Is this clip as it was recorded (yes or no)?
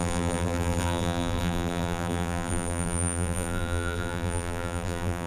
no